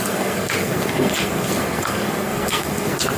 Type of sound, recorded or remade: remade